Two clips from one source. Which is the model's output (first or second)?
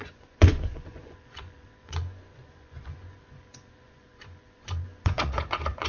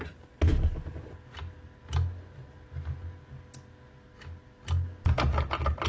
first